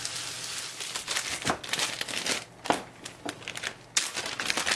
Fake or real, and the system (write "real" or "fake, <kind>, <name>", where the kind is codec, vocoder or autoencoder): real